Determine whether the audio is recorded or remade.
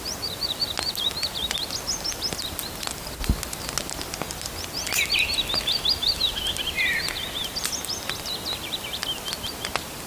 recorded